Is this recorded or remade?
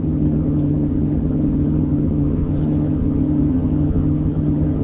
remade